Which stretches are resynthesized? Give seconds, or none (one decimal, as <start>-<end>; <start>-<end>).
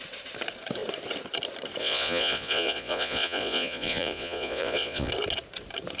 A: 1.8-5.1